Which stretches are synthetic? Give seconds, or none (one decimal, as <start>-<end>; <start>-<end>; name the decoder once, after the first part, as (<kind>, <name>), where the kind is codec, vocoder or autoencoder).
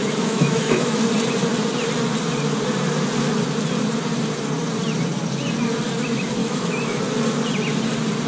0.0-1.0 (autoencoder, DAC-VAE); 6.4-7.0